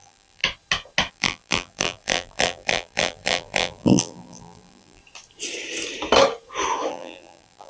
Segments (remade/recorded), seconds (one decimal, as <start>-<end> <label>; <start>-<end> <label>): 0.0-0.4 remade; 0.4-1.1 recorded; 1.1-5.0 remade; 5.0-6.9 recorded; 6.9-7.7 remade